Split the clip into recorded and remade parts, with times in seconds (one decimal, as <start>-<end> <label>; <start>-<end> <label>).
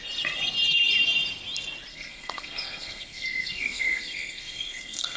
0.0-1.9 recorded; 1.9-5.2 remade